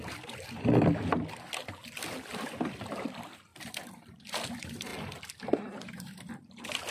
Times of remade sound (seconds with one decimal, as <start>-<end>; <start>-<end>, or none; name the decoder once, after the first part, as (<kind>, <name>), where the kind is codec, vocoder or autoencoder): 0.0-1.8 (vocoder, BigVGAN v2); 2.6-4.9; 6.3-6.9